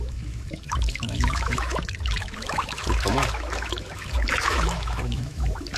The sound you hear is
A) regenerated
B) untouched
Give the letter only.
A